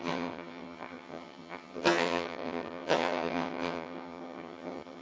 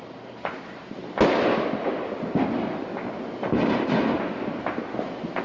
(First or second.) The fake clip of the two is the first